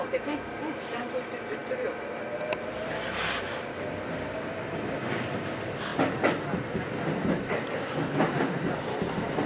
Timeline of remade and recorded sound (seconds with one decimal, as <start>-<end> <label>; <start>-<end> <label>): 0.0-9.5 recorded